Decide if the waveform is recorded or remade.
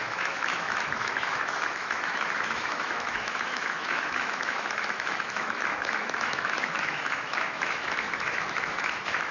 remade